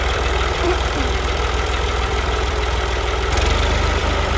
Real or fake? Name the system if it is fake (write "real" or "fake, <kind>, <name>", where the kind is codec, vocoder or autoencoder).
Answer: fake, vocoder, BigVGAN v2